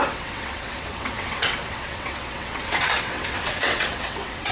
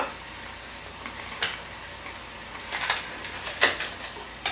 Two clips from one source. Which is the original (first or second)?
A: second